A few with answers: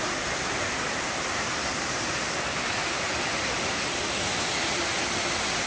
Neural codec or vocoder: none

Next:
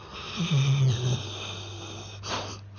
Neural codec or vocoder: none